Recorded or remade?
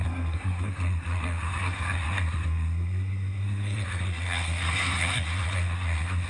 remade